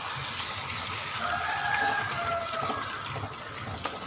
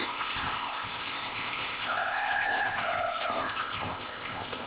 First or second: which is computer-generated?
second